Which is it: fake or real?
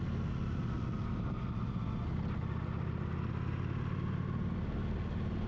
real